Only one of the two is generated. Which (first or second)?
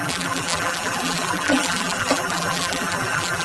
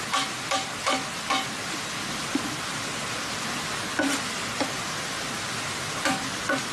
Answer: first